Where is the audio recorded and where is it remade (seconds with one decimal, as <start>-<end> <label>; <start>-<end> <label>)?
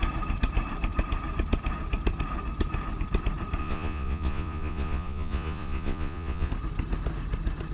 0.0-3.6 recorded; 3.6-6.5 remade; 6.5-7.7 recorded